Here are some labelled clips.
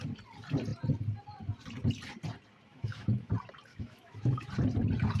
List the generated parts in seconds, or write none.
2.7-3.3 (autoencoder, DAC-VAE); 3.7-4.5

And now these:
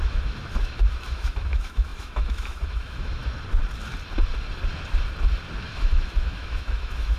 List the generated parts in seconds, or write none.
0.0-3.2 (autoencoder, DAC-VAE); 5.6-7.2

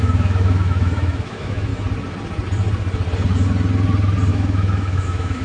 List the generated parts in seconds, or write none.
0.0-1.7 (autoencoder, DAC-VAE); 4.3-5.4

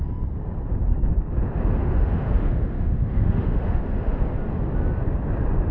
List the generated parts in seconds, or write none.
1.8-4.2 (autoencoder, DAC-VAE)

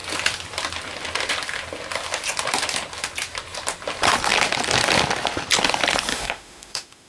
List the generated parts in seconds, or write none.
6.1-7.1 (autoencoder, DAC-VAE)

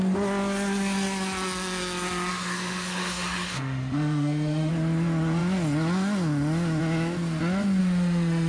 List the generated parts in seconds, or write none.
2.3-4.7 (autoencoder, DAC-VAE); 7.8-8.5